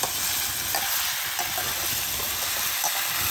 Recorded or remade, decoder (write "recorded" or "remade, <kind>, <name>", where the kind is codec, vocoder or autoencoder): recorded